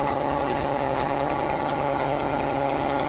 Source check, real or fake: fake